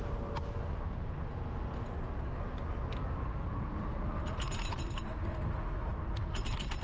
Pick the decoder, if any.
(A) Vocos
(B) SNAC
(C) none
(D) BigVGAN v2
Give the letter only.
C